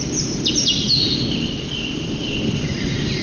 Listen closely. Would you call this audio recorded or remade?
recorded